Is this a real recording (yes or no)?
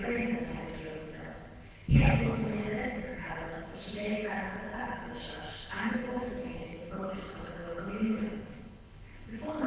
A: no